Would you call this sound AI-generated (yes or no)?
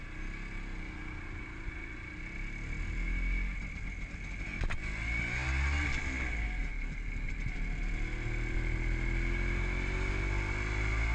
no